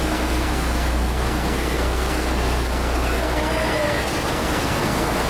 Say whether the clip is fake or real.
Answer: fake